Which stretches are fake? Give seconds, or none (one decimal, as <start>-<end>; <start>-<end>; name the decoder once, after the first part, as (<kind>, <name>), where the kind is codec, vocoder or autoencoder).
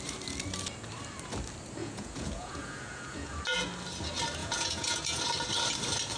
1.8-3.4 (vocoder, Vocos); 4.4-5.2